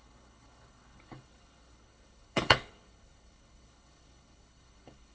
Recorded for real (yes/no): no